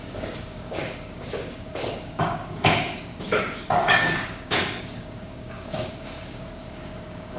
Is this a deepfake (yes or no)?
yes